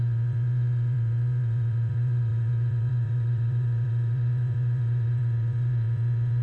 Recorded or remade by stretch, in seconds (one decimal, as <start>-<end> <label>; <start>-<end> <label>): 0.0-6.4 remade